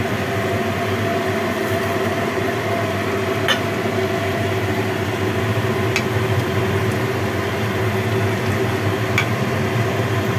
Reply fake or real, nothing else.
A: real